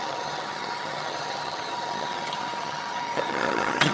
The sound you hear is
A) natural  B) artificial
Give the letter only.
B